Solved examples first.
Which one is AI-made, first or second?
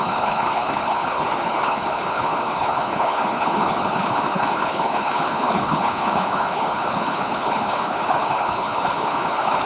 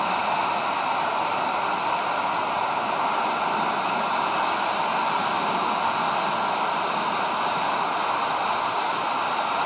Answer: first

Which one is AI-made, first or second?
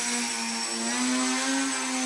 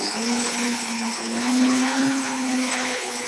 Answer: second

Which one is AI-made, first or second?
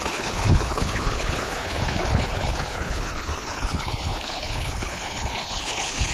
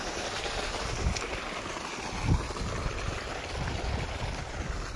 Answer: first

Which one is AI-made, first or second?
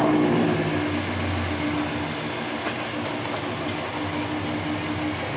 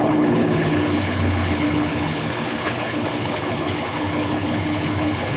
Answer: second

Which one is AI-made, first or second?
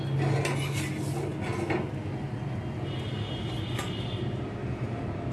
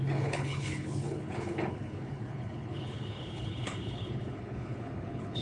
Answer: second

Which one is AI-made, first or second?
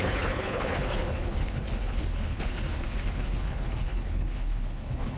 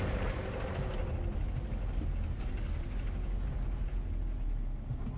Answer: first